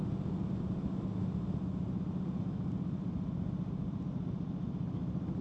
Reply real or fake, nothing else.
real